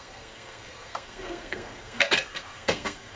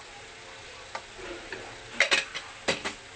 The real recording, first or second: second